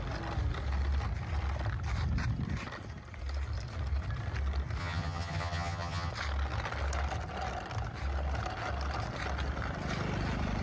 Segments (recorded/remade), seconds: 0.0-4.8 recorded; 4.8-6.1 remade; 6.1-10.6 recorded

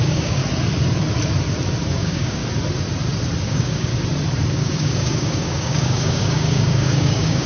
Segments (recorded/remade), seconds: 0.0-0.4 remade; 0.4-1.9 recorded; 1.9-2.4 remade; 2.4-3.4 recorded; 3.4-3.9 remade; 3.9-4.5 recorded; 4.5-7.5 remade

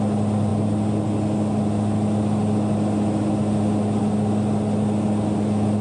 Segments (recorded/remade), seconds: 0.0-5.8 recorded

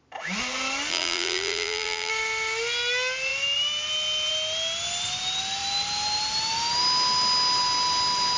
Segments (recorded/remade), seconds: 0.0-0.9 recorded; 0.9-2.1 remade; 2.1-8.4 recorded